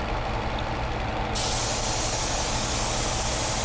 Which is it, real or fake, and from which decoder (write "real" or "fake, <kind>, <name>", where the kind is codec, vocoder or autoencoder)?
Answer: real